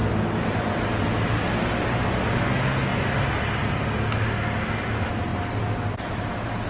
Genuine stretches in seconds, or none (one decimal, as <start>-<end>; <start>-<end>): 0.0-6.7

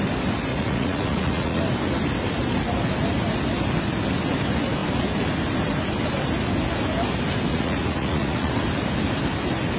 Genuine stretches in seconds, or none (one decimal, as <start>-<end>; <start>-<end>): 0.0-0.5; 1.6-7.5; 8.5-9.8

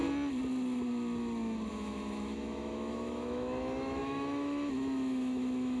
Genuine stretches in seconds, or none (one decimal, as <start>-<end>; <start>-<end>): 0.0-1.7

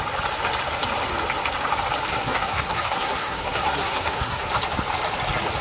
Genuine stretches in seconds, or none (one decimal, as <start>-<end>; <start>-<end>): 0.0-2.1; 4.5-5.6